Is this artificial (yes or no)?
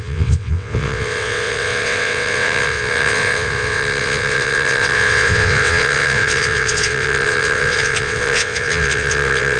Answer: yes